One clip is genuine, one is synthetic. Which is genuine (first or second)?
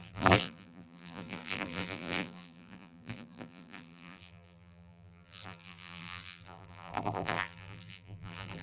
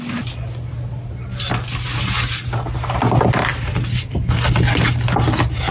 second